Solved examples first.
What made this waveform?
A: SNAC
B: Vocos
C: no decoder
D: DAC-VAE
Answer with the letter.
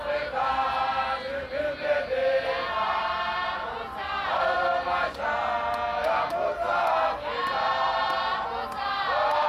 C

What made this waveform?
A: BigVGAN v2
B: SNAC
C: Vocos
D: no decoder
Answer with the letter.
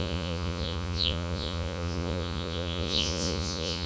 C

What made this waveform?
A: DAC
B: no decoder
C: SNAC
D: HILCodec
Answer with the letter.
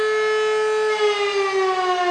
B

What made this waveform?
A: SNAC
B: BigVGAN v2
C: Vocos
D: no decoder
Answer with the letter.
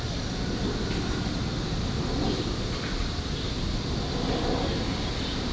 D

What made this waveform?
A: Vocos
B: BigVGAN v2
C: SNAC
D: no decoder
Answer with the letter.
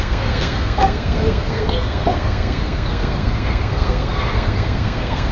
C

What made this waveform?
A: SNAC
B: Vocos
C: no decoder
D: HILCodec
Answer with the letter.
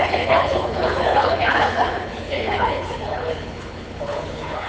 D